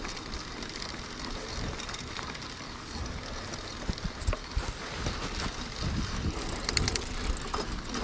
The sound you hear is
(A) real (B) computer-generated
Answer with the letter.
A